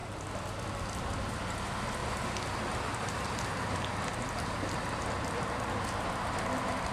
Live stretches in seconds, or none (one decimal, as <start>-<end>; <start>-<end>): 0.0-6.9